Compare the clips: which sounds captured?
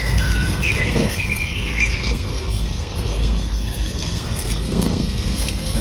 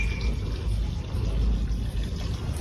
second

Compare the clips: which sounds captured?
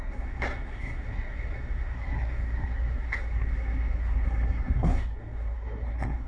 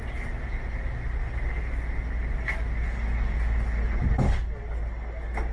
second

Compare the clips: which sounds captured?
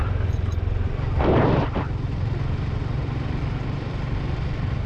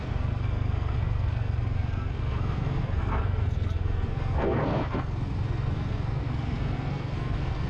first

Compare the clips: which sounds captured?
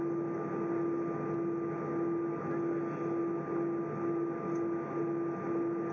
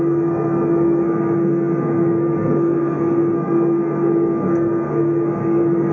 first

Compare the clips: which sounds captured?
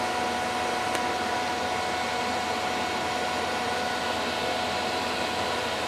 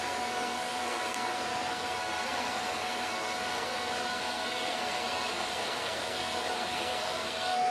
first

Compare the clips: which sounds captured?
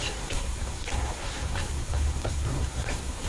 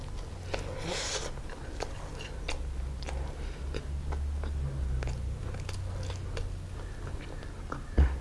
second